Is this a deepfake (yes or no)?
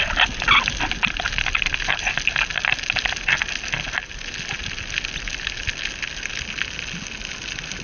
no